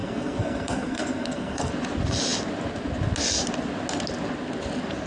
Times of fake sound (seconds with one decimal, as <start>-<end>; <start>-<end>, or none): 0.0-1.7